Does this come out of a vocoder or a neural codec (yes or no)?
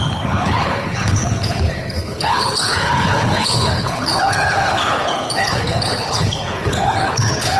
yes